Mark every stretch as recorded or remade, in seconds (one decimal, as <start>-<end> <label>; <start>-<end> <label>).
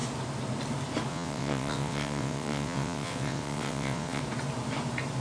0.0-1.1 recorded; 1.1-4.2 remade; 4.2-5.2 recorded